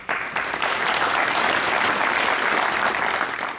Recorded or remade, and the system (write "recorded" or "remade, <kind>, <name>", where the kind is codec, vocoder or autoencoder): recorded